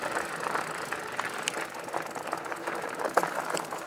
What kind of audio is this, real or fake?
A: real